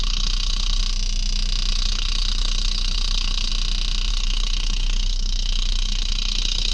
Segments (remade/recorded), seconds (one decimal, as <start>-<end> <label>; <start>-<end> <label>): 0.0-0.8 remade; 0.8-1.7 recorded; 1.7-3.5 remade; 3.5-4.1 recorded; 4.1-6.7 remade